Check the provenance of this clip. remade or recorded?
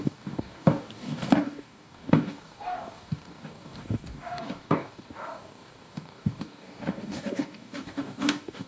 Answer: remade